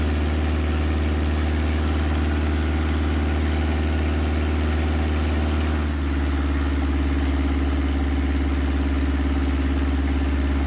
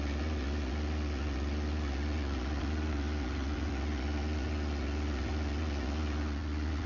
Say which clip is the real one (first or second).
first